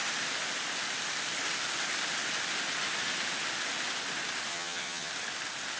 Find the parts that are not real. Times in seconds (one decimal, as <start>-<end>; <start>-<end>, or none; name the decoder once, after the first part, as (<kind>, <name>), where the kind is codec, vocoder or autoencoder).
4.5-5.1 (vocoder, HiFi-GAN)